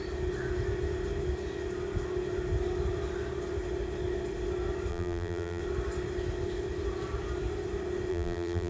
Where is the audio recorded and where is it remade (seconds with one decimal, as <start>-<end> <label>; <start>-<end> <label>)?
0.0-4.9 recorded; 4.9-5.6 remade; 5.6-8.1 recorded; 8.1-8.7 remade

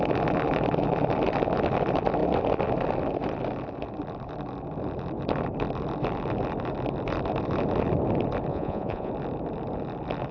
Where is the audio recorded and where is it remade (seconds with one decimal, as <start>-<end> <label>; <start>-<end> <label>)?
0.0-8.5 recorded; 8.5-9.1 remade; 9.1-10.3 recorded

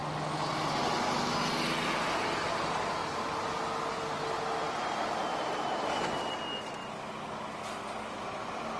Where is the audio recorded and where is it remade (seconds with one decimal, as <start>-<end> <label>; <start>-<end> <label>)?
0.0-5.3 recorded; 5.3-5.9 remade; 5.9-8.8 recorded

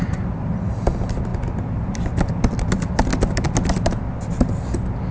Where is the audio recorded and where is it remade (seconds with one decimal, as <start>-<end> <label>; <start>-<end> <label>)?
0.0-5.1 recorded

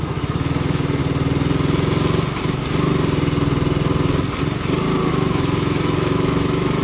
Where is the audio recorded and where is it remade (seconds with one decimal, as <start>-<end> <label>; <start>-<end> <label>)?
0.0-1.0 remade; 1.0-5.1 recorded; 5.1-6.8 remade

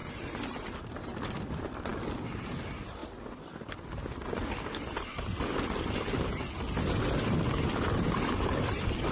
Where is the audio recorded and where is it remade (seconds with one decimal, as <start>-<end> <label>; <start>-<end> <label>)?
0.0-9.1 recorded

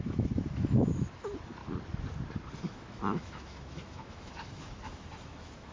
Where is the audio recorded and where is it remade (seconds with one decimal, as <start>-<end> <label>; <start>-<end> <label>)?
0.0-1.6 remade; 1.6-2.6 recorded; 2.6-5.7 remade

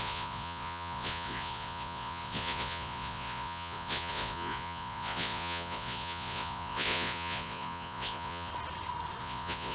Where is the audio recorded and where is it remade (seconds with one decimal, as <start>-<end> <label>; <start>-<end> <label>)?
0.0-8.5 remade; 8.5-9.2 recorded; 9.2-9.7 remade